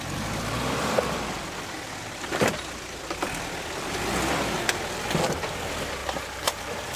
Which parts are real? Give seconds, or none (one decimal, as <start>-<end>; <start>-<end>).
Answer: 0.0-6.0; 6.6-7.0